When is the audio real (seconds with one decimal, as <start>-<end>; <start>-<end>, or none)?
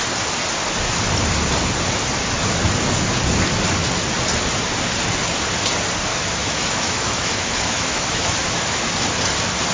0.0-6.1; 8.9-9.7